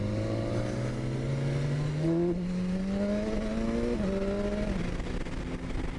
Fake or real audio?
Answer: real